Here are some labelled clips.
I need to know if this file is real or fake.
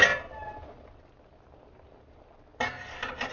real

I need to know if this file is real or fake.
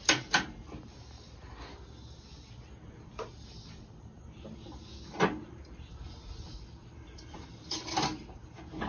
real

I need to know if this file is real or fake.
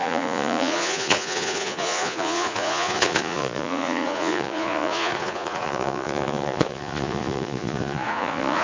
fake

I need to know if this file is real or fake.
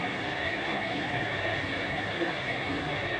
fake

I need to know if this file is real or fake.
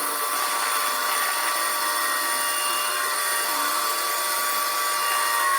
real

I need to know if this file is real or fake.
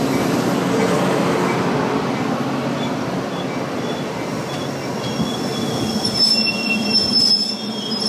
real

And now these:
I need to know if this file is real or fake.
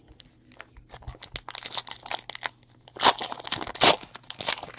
real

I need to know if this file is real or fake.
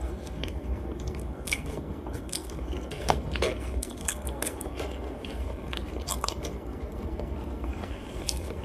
fake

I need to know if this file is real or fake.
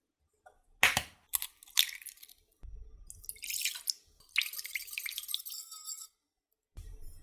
real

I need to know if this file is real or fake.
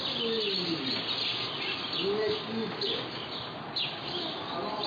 real